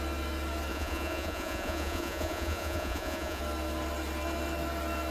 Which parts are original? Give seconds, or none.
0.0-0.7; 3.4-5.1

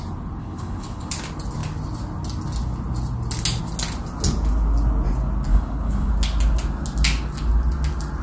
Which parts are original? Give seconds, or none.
0.0-0.4; 1.1-5.5; 6.1-8.2